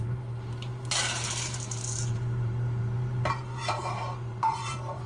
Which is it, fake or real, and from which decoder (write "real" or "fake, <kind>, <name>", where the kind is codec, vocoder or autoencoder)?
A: fake, vocoder, BigVGAN v2